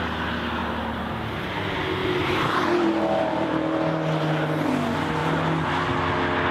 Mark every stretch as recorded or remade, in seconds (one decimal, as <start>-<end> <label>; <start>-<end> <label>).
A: 0.0-2.0 recorded; 2.0-3.6 remade; 3.6-6.5 recorded